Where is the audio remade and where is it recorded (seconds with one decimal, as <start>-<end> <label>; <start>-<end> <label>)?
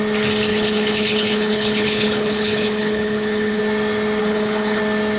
0.0-0.5 recorded; 0.5-3.6 remade; 3.6-4.2 recorded; 4.2-4.8 remade; 4.8-5.2 recorded